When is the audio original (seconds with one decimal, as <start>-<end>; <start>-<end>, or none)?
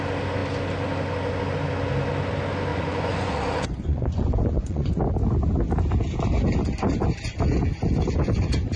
0.0-2.7; 5.0-8.8